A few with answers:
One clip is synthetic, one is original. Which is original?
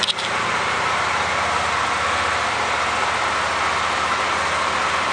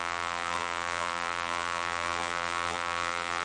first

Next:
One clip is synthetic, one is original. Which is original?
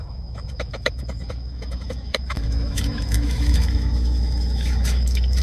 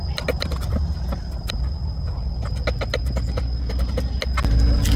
second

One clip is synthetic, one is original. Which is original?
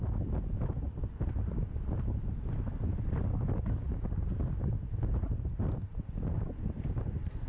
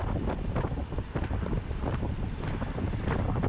first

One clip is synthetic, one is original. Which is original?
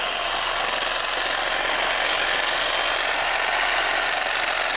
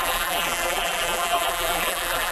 first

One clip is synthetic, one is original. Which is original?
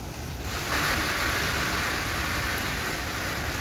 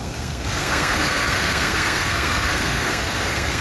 first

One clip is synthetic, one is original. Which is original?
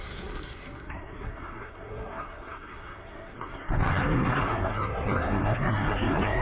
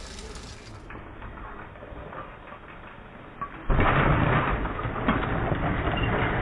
second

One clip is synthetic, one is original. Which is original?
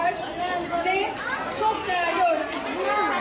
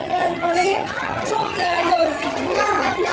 first